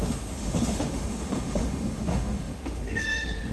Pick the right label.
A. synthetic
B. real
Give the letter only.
A